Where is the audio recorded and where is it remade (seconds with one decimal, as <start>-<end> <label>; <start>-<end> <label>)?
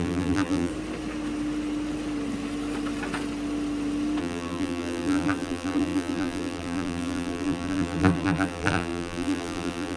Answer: 0.0-0.7 remade; 0.7-4.2 recorded; 4.2-10.0 remade